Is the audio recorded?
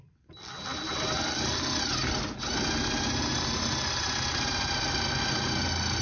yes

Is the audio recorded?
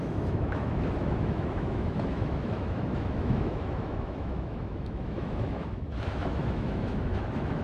no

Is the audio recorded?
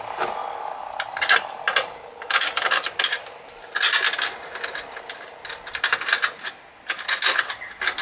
yes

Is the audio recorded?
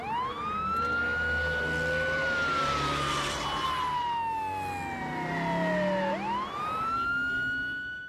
yes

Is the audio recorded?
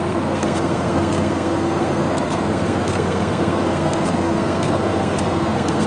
no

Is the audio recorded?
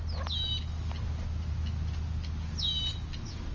yes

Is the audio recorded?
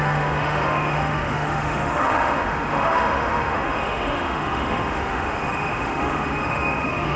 no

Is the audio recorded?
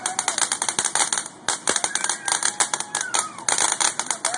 yes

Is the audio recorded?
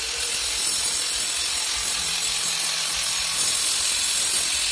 yes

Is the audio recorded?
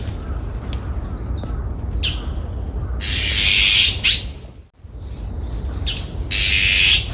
yes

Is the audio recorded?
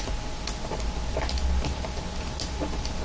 yes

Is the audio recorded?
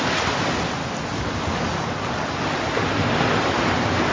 yes